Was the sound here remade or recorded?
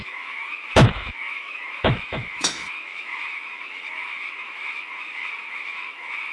remade